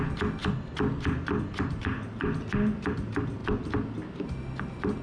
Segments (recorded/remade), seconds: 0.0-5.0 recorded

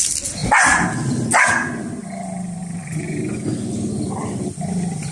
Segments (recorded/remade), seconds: 0.0-2.6 recorded; 2.6-3.2 remade; 3.2-5.1 recorded

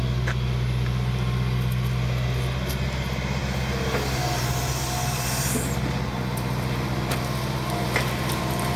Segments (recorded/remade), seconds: 0.0-8.8 recorded